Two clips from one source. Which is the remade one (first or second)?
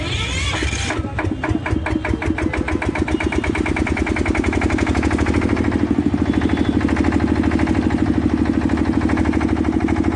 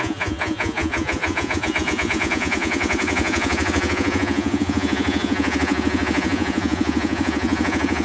second